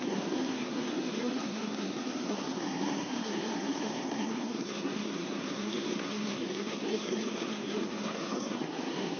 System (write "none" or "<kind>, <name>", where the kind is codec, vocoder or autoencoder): codec, SNAC